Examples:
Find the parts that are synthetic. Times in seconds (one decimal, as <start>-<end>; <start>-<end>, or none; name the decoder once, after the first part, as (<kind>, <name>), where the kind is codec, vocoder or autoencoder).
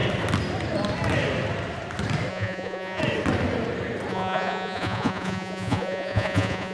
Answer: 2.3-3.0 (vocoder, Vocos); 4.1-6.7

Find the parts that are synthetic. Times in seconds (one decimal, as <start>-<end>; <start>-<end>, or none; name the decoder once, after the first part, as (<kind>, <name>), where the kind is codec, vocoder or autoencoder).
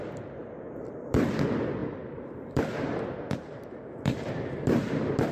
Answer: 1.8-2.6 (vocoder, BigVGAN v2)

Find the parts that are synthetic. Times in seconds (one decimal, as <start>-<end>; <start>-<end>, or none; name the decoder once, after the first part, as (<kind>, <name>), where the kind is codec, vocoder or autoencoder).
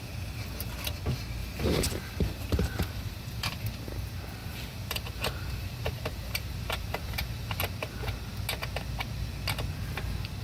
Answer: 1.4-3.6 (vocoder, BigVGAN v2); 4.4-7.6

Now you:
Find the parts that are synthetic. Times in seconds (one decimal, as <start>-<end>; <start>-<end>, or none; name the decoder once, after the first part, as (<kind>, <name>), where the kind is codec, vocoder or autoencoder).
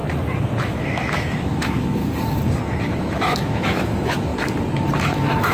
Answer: 0.6-2.0 (autoencoder, DAC-VAE); 2.8-4.3; 5.0-5.5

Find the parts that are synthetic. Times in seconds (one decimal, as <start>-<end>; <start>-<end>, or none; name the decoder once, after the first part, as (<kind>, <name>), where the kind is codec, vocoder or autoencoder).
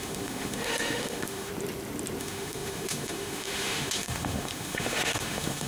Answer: 0.0-1.5 (autoencoder, DAC-VAE); 2.2-5.7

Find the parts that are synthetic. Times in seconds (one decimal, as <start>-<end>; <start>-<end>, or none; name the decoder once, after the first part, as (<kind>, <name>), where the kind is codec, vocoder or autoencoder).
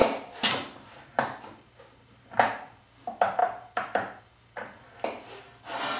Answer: none